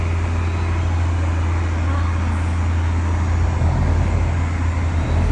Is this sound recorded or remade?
recorded